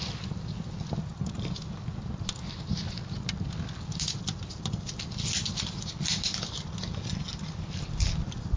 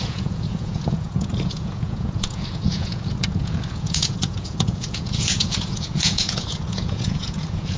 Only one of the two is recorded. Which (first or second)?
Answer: first